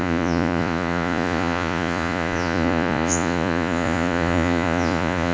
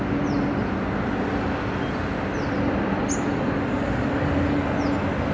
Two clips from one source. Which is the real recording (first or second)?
second